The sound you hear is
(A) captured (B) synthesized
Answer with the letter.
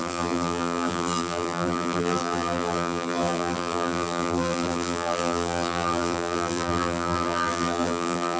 B